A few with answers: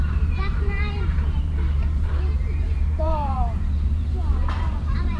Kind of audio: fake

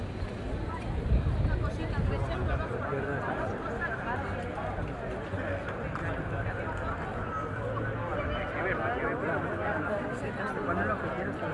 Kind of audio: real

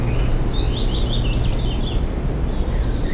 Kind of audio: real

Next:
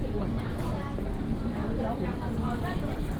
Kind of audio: fake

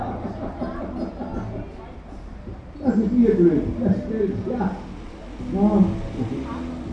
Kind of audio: real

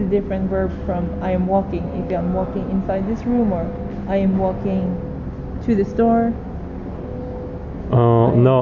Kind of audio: real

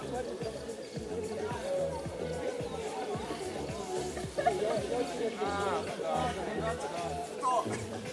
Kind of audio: fake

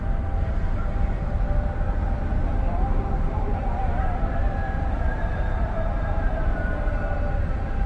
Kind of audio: fake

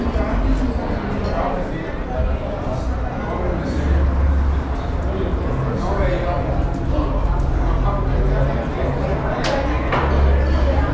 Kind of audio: real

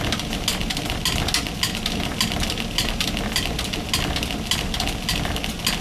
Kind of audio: real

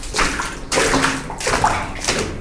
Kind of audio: real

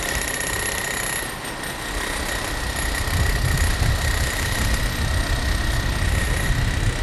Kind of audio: real